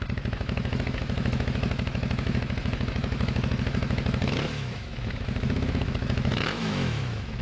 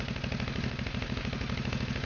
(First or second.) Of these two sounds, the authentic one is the second